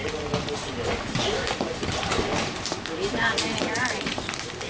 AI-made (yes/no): no